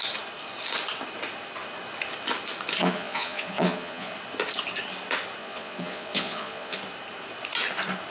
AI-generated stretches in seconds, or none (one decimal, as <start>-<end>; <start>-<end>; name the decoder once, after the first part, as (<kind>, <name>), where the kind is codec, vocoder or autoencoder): 2.8-4.1 (vocoder, Vocos); 5.4-6.8